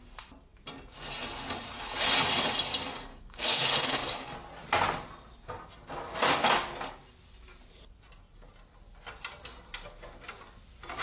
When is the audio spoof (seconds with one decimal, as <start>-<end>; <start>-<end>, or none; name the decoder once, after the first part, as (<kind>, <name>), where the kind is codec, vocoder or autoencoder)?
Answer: 3.1-3.7 (codec, DAC)